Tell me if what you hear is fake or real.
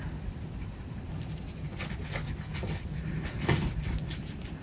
real